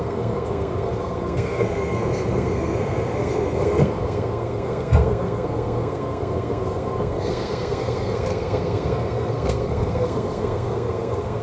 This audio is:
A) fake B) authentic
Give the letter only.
A